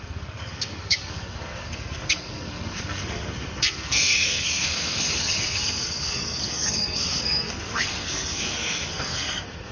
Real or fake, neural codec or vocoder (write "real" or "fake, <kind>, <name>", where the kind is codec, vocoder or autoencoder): fake, codec, SNAC